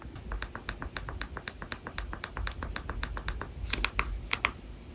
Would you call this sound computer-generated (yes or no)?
no